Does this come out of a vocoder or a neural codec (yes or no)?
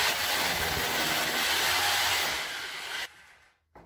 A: no